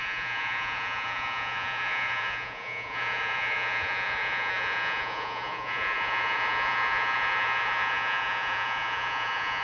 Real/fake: fake